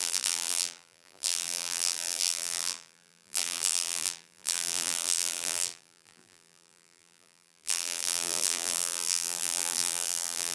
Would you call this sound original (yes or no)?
no